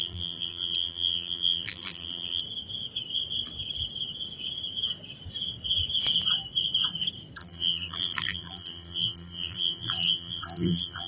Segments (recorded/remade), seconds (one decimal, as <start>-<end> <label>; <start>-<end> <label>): 0.0-2.4 remade; 2.4-7.4 recorded; 7.4-11.1 remade